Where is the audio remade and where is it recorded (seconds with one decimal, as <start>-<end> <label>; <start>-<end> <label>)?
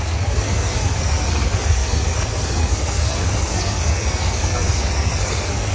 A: 0.0-5.7 remade